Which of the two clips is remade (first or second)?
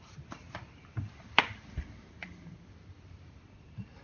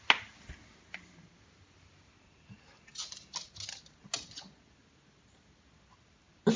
first